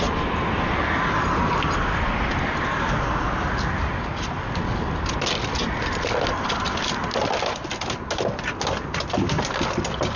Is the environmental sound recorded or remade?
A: recorded